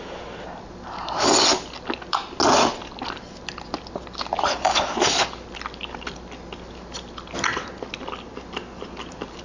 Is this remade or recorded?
recorded